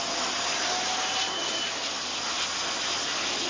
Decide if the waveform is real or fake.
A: real